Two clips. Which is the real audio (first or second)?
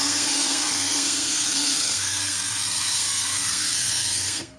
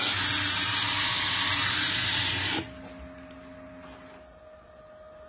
second